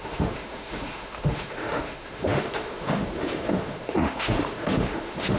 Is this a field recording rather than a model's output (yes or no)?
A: no